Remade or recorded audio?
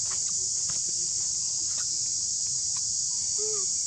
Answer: recorded